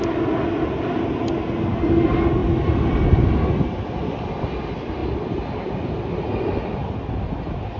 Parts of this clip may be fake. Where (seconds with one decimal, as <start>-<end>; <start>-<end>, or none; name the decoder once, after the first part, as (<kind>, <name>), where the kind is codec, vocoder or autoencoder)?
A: none